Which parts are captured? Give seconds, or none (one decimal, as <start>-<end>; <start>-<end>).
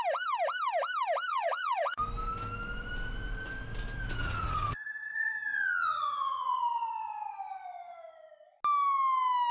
0.0-1.3; 2.0-4.2; 6.6-9.5